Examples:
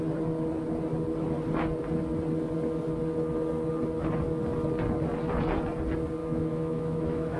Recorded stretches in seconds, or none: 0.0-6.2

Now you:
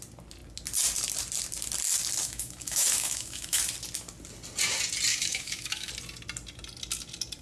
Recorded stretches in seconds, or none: 0.0-2.2; 3.6-5.1; 5.9-7.4

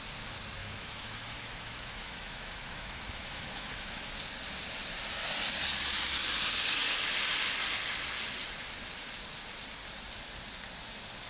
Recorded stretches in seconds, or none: 0.0-0.6; 4.1-11.3

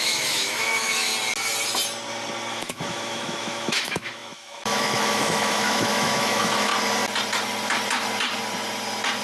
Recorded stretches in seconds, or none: 1.1-2.5; 6.7-9.2

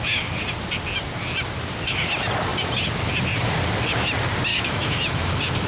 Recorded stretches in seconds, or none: 0.0-4.5; 5.3-5.7

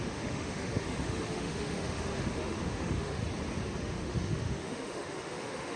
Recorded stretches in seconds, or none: 3.2-3.8

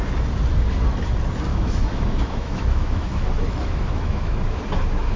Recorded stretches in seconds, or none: 0.0-1.5; 4.6-5.2

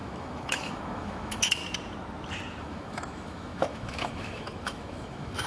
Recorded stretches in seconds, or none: 1.6-2.6